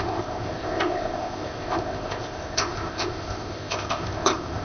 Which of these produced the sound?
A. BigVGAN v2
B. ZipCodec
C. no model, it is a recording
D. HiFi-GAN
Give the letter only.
B